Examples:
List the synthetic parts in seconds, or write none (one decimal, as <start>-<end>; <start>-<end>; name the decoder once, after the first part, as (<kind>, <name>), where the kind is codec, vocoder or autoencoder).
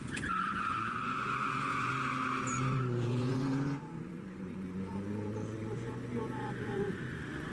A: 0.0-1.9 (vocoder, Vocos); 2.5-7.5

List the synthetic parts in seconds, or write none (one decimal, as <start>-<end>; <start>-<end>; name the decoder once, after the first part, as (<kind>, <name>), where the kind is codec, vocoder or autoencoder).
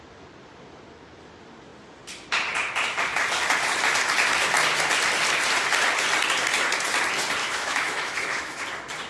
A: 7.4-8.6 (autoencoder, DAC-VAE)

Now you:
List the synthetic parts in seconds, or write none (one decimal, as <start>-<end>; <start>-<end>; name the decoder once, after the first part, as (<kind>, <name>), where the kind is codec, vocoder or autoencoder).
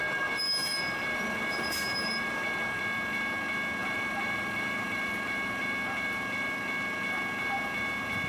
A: 0.6-2.8 (vocoder, BigVGAN v2); 3.8-5.6